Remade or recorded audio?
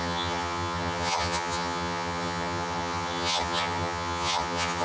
remade